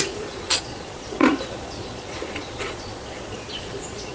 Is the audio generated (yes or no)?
yes